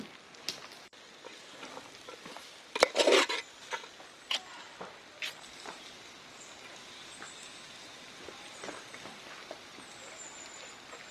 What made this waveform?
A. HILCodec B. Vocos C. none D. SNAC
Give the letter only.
C